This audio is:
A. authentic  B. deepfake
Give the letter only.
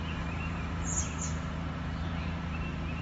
B